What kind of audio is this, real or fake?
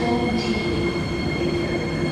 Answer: real